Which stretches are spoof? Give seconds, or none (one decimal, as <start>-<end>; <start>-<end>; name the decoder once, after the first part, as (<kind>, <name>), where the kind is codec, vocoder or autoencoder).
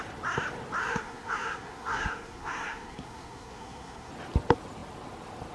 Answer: 0.8-4.1 (codec, SNAC)